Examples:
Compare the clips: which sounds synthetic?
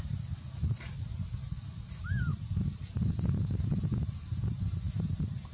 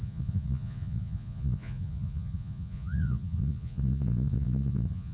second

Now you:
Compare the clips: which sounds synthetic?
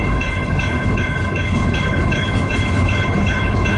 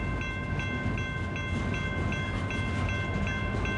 first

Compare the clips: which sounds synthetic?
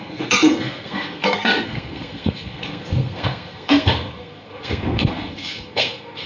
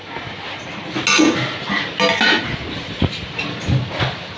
first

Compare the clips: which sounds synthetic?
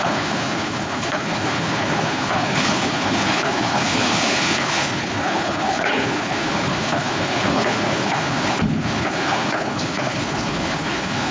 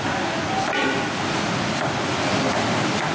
first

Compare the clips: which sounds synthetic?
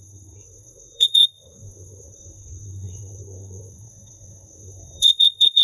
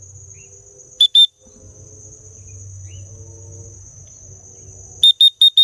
first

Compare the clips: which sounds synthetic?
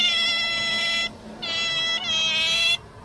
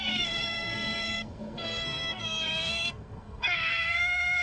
second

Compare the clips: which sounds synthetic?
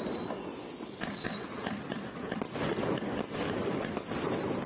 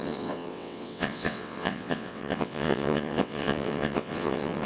second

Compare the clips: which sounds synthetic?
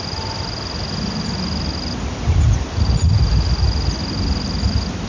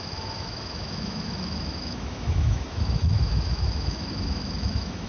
second